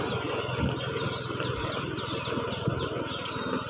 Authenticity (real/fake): real